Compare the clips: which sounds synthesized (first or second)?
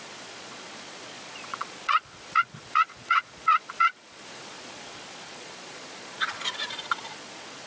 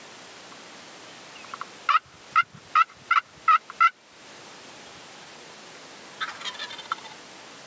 first